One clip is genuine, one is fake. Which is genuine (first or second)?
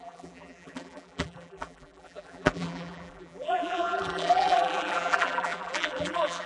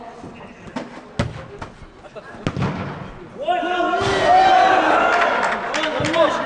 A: second